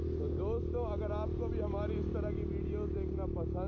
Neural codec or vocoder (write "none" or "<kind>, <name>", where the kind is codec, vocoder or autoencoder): none